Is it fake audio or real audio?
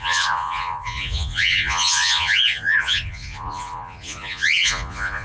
fake